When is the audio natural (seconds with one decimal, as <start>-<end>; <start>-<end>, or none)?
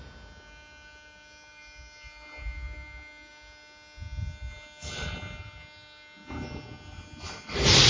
0.0-7.9